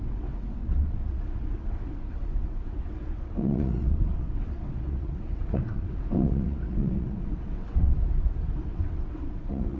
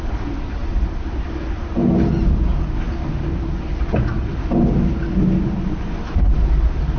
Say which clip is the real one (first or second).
second